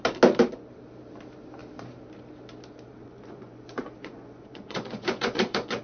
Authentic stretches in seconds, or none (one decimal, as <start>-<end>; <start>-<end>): 0.0-3.0